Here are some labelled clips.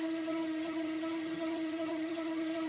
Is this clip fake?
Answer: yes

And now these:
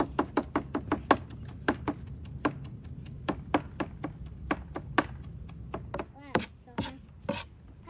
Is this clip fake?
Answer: no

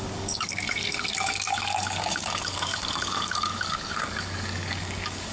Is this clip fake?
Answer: yes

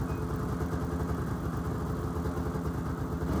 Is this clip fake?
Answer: no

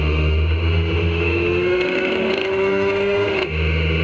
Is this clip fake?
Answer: yes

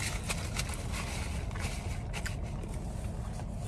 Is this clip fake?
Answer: no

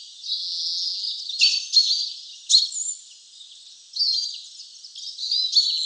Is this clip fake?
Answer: no